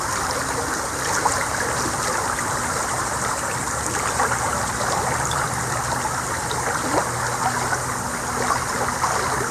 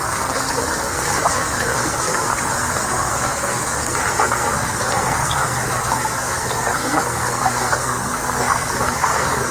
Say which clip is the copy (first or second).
second